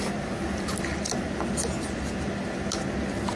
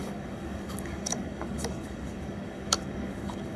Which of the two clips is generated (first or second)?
second